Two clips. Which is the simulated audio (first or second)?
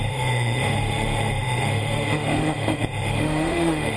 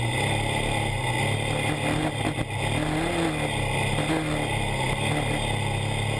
first